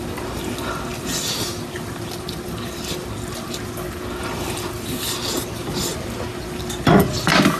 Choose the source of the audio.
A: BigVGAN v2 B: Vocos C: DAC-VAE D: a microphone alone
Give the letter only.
D